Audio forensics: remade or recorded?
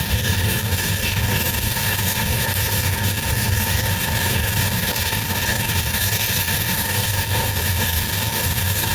remade